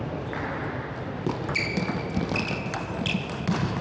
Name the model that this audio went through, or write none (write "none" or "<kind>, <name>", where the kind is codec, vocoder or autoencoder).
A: none